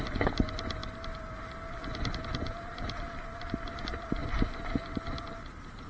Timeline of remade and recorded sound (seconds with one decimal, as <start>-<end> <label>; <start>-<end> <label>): 0.0-5.9 recorded